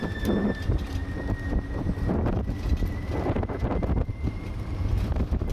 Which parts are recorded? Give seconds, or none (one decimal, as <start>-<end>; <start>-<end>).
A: 1.0-4.3; 4.8-5.5

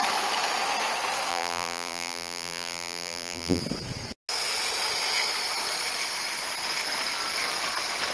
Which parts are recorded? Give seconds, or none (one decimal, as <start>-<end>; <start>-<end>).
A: 0.0-1.3; 3.6-8.1

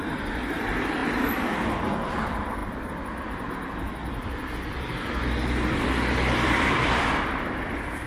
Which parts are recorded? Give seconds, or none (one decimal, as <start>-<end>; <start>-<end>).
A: none

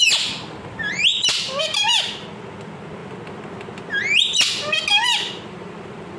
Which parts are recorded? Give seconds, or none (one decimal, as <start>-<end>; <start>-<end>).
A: 0.0-1.1; 1.6-4.9

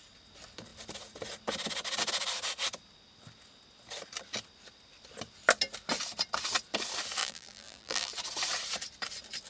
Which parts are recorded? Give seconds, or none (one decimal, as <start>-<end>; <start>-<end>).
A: 0.0-7.2; 8.1-9.5